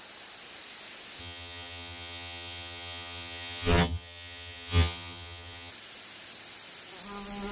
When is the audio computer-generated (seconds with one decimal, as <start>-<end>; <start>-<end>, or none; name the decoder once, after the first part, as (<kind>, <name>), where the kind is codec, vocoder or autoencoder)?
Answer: 1.2-5.7 (vocoder, HiFi-GAN)